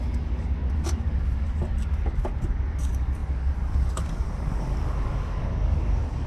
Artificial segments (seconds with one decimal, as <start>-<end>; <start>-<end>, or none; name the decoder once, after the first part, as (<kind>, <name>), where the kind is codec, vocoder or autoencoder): 0.0-6.3 (codec, DAC)